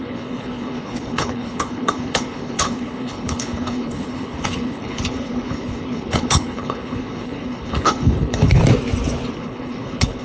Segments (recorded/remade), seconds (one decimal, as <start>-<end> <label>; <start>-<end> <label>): 0.0-8.6 remade; 8.6-9.3 recorded; 9.3-10.2 remade